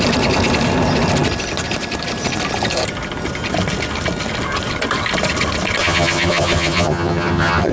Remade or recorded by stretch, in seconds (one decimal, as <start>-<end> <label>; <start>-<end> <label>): 0.0-5.8 recorded; 5.8-7.7 remade